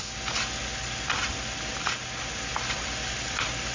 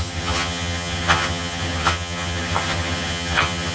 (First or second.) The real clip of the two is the first